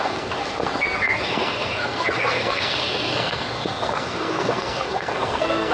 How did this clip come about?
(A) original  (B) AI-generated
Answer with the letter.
B